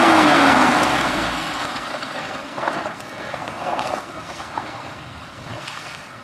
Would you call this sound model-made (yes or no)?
yes